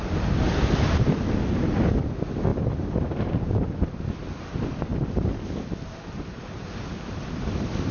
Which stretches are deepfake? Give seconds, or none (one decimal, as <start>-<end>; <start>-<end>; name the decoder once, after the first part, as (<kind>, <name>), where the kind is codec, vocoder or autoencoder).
2.5-4.1 (vocoder, BigVGAN v2)